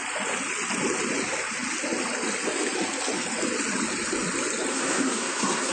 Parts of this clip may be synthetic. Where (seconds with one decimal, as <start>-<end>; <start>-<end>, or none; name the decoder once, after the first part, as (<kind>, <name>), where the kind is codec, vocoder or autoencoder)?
4.7-5.7 (codec, SNAC)